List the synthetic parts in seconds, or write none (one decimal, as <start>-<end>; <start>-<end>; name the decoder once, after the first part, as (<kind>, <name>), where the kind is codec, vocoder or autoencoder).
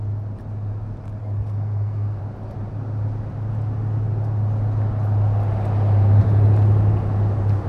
1.2-2.2 (codec, SNAC)